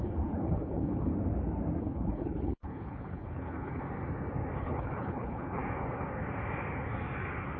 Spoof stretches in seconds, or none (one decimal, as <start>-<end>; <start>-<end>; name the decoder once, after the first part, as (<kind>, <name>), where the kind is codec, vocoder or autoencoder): 0.0-1.1 (codec, HILCodec); 1.8-3.8; 4.6-5.6